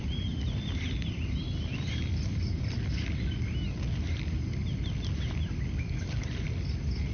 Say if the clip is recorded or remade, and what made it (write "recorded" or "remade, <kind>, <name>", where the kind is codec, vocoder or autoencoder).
recorded